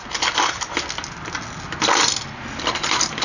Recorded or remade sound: recorded